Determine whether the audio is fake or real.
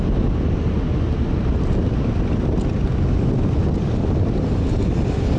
real